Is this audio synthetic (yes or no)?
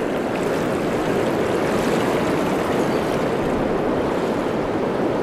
no